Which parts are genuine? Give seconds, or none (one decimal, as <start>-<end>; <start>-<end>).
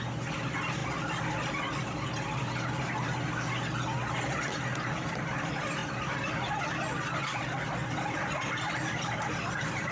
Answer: 0.0-9.9